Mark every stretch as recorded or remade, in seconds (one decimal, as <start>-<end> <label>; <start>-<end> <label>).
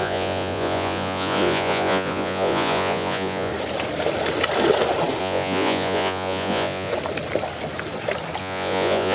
0.0-3.5 remade; 3.5-5.2 recorded; 5.2-6.9 remade; 6.9-8.4 recorded; 8.4-9.1 remade